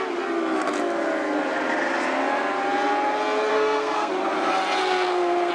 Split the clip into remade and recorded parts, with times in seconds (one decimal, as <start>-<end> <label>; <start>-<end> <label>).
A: 0.0-3.5 recorded; 3.5-4.1 remade; 4.1-4.8 recorded; 4.8-5.5 remade